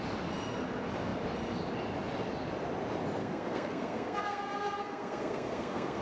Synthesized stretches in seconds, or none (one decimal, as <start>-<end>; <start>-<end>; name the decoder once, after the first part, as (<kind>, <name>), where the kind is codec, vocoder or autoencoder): 3.2-6.0 (codec, SNAC)